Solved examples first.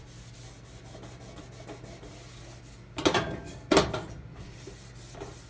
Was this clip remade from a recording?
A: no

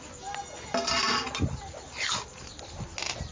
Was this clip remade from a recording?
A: no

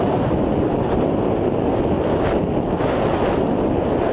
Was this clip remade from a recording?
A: no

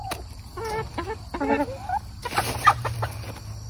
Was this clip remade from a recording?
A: no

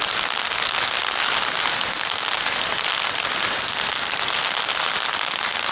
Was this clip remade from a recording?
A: no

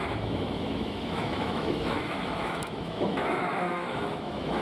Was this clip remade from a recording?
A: yes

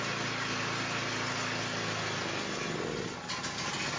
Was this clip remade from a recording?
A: no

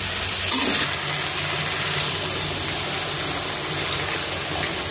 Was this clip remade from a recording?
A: no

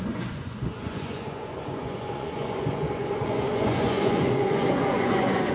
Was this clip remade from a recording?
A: yes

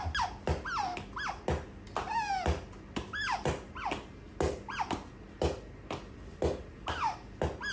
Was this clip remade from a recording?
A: no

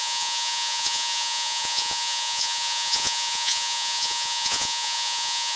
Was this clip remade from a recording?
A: yes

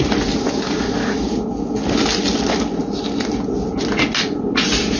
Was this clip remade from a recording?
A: no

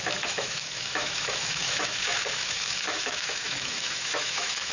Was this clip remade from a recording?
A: yes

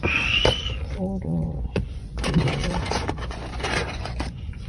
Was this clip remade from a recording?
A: yes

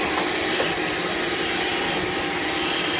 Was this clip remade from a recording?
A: no